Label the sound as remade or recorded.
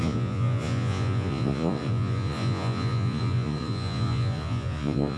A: remade